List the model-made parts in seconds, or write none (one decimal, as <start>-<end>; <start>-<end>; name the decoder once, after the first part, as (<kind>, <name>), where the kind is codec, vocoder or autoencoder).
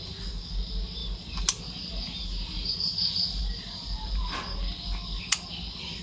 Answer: none